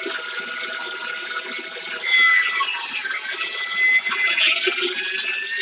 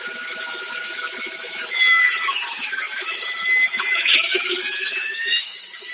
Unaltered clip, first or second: first